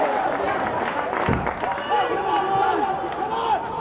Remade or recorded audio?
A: recorded